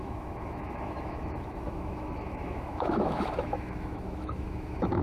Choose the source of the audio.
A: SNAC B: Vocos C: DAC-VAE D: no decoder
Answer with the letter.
C